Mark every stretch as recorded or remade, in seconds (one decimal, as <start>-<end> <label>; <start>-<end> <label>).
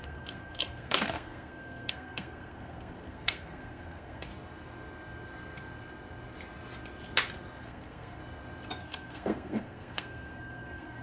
0.0-4.3 remade; 4.3-7.6 recorded; 7.6-8.2 remade; 8.2-8.8 recorded; 8.8-11.0 remade